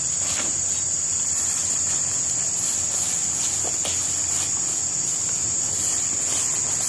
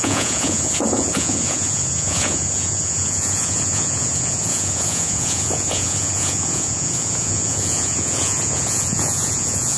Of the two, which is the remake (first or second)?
second